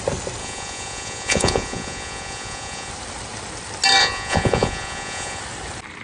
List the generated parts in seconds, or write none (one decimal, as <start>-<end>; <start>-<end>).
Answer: 0.4-2.9; 4.0-5.4